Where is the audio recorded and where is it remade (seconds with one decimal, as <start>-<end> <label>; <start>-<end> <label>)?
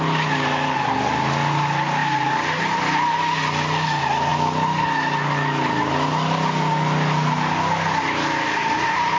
0.0-9.2 recorded